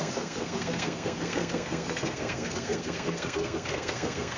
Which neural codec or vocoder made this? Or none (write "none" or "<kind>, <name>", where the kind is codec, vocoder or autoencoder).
codec, SNAC